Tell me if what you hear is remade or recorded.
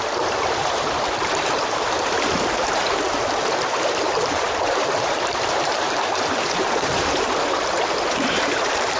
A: remade